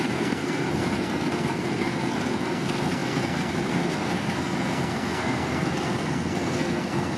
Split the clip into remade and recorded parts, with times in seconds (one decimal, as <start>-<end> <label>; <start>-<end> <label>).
0.0-7.2 remade